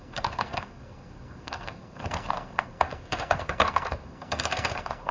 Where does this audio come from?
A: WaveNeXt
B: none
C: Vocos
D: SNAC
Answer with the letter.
D